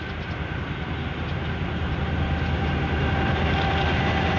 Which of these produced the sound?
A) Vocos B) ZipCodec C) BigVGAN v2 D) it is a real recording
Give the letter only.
D